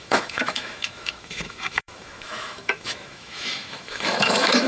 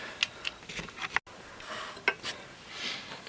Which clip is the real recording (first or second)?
second